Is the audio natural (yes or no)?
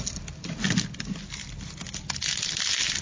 yes